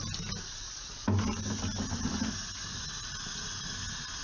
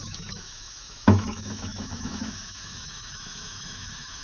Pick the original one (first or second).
first